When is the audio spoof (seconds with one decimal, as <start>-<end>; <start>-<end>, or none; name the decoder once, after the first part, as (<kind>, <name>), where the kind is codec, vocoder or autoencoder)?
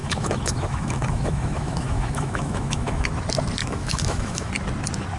0.0-3.1 (autoencoder, DAC-VAE); 3.6-4.5